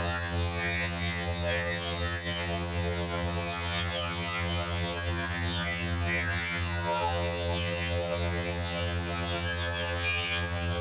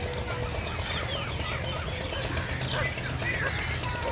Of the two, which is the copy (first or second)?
first